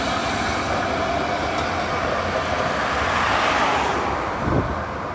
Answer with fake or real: real